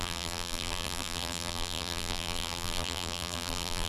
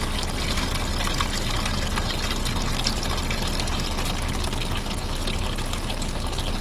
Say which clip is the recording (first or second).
second